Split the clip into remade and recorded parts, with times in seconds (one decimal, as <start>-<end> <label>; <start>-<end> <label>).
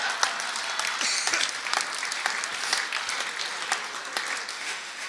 0.0-4.5 recorded; 4.5-5.1 remade